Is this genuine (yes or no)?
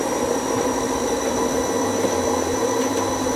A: yes